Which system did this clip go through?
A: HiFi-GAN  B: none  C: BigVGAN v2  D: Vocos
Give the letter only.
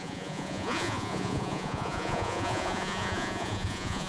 D